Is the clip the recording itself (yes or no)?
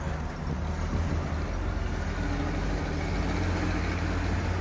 yes